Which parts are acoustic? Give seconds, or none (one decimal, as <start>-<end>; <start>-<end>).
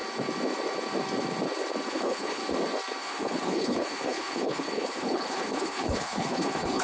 0.0-1.9; 2.4-3.0